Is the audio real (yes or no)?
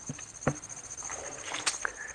yes